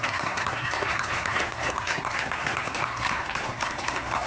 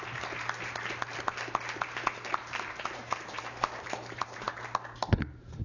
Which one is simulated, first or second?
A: first